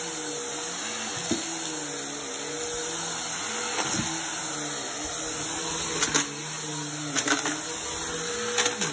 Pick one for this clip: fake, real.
real